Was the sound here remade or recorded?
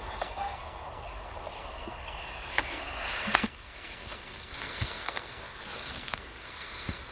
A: remade